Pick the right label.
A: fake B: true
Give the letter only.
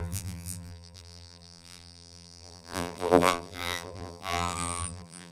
A